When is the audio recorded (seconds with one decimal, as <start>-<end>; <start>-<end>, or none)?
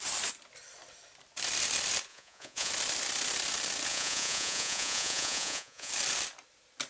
0.0-2.1; 2.7-3.9; 5.9-6.9